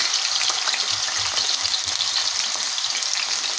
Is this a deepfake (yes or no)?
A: no